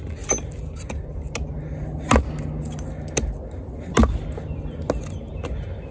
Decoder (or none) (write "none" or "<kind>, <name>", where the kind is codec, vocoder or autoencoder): none